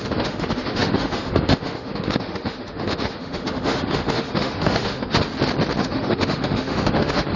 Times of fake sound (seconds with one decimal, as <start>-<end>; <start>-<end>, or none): 0.0-5.2; 5.8-7.4

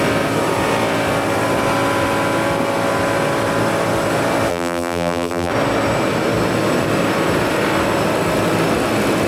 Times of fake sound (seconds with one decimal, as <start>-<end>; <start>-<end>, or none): 4.5-5.5